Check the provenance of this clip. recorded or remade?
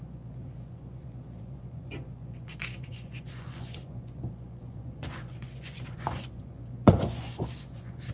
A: remade